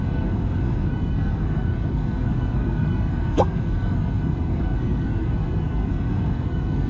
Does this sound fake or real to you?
fake